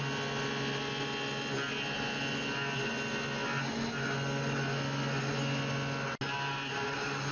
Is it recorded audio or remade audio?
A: recorded